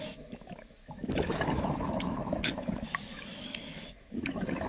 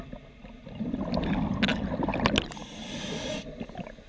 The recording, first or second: second